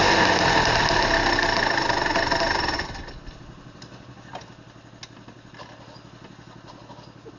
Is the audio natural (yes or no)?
yes